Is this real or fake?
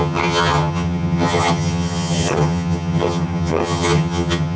fake